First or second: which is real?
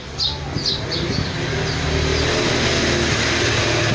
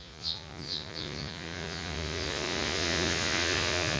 first